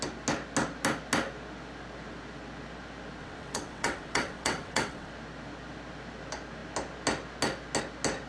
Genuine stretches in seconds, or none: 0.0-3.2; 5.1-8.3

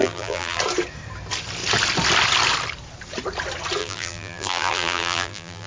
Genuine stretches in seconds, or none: 0.6-3.8

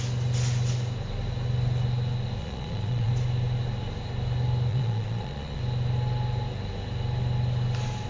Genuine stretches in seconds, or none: 0.0-2.4; 3.1-4.7; 5.6-8.1

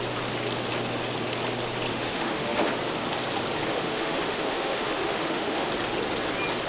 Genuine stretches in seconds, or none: 0.0-1.9; 2.7-3.7; 5.7-6.7

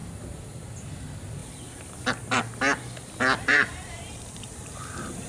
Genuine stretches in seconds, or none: 0.0-0.8; 1.4-3.4